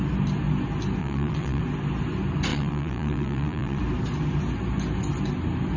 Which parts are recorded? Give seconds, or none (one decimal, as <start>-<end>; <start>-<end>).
0.0-1.0; 1.6-2.5; 3.8-5.8